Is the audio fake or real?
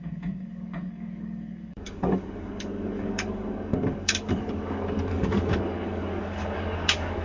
fake